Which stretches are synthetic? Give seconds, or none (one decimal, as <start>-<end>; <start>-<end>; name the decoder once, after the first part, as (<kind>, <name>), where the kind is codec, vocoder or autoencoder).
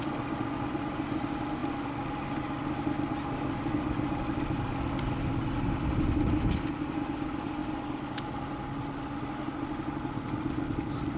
none